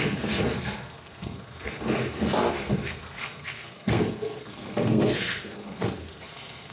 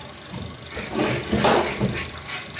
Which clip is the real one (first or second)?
second